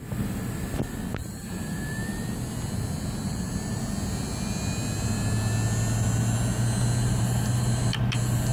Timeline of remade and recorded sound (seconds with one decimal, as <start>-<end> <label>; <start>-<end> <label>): 0.0-1.1 recorded; 1.1-1.8 remade; 1.8-3.2 recorded; 3.2-3.8 remade; 3.8-7.0 recorded; 7.0-8.0 remade; 8.0-8.5 recorded

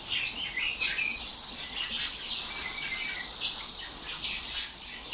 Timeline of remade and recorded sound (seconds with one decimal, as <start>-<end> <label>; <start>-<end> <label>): 0.0-5.1 recorded

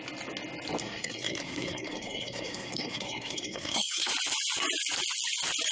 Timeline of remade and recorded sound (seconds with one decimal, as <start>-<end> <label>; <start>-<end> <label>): 0.0-0.8 recorded; 0.8-4.1 remade; 4.1-5.7 recorded

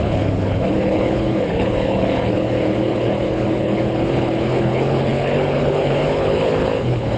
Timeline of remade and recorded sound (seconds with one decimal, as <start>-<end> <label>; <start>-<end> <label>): 0.0-7.2 remade

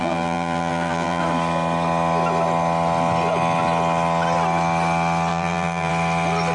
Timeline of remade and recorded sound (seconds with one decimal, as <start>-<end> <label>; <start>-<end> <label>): 0.0-1.2 remade; 1.2-5.3 recorded; 5.3-5.9 remade; 5.9-6.5 recorded

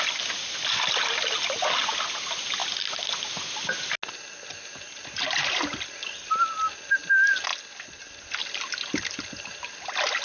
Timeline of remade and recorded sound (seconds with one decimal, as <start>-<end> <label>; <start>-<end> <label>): 0.0-10.2 recorded